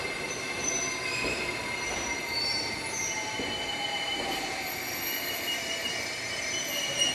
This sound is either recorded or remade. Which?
remade